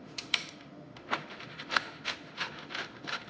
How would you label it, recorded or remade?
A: remade